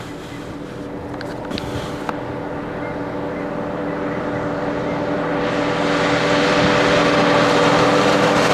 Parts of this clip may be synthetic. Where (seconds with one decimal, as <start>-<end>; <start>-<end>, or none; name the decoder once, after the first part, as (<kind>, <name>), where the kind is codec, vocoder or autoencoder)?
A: 7.0-8.5 (vocoder, BigVGAN v2)